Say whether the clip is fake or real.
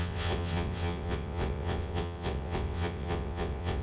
fake